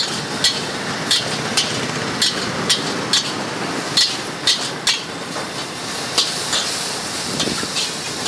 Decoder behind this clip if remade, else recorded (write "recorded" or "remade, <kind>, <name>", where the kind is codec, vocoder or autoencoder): recorded